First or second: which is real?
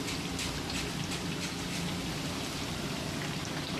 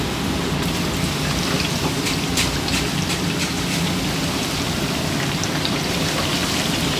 first